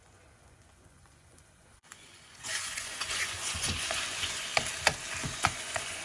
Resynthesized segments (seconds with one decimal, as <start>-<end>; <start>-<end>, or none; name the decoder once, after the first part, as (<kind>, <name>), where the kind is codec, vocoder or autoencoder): 0.0-4.5 (vocoder, Vocos); 5.2-6.0